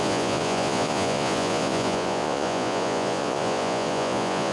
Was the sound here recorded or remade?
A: remade